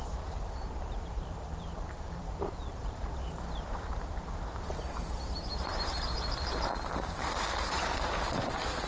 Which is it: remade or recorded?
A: remade